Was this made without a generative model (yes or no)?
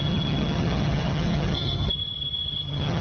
no